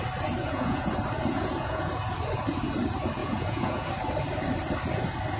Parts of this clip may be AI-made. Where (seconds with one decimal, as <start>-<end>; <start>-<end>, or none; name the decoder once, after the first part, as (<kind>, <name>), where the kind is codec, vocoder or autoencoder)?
0.4-0.9 (vocoder, Vocos); 1.3-1.9; 3.2-3.9